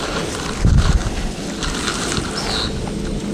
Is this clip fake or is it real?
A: real